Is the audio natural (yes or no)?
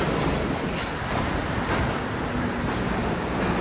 yes